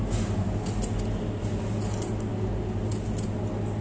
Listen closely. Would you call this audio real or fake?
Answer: real